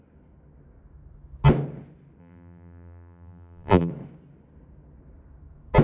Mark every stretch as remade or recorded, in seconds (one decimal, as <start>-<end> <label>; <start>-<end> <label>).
0.0-2.2 recorded; 2.2-3.9 remade; 3.9-5.8 recorded